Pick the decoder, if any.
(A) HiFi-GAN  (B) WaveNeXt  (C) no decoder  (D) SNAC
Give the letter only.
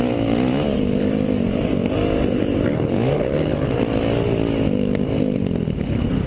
C